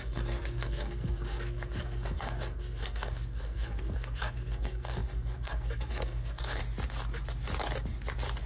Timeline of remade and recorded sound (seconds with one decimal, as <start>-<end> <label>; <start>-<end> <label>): 0.0-6.6 remade; 6.6-8.5 recorded